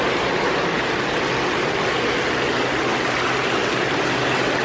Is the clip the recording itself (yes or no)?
yes